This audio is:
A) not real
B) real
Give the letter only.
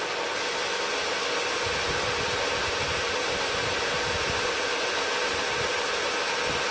B